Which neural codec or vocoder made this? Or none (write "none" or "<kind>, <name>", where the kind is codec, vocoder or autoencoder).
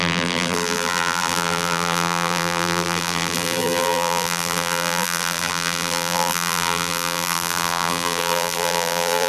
vocoder, BigVGAN v2